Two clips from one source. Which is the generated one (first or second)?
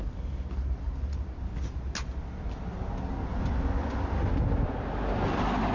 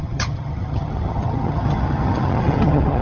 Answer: second